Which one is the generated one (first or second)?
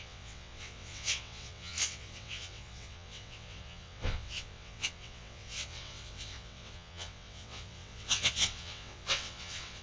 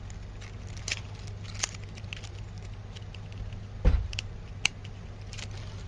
first